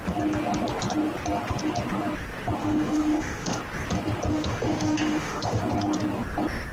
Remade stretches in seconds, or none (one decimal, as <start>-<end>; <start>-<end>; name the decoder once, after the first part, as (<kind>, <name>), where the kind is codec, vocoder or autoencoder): 2.6-3.6 (autoencoder, DAC-VAE); 4.3-5.6